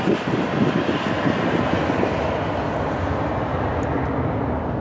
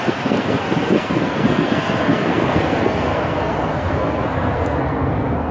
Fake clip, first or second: second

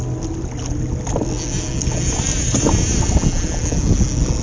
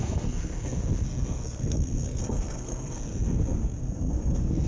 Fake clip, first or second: second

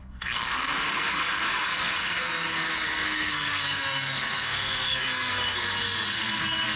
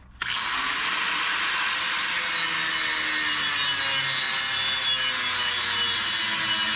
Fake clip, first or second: first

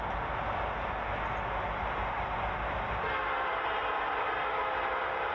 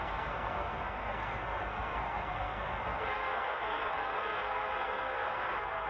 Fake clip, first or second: second